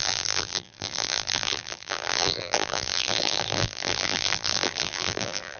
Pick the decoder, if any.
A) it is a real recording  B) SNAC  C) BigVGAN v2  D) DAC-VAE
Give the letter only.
C